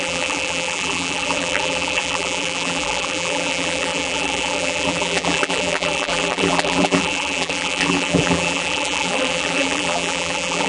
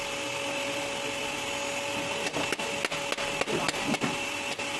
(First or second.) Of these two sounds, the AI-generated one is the first